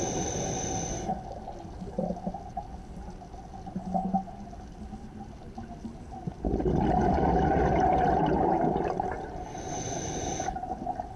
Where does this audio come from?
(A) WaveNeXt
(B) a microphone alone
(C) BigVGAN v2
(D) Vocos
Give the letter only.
B